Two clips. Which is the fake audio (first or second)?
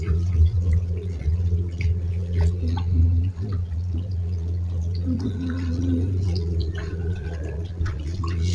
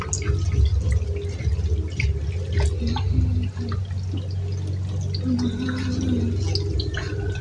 first